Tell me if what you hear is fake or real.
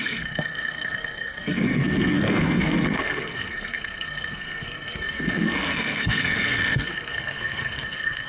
fake